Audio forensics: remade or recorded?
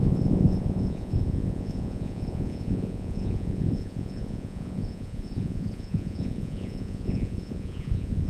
remade